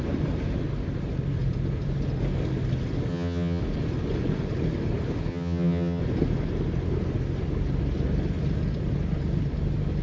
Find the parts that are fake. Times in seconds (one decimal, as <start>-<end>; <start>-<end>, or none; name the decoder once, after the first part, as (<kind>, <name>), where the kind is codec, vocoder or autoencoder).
3.1-3.6 (vocoder, HiFi-GAN); 5.3-6.0